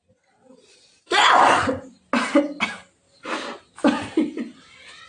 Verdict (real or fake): real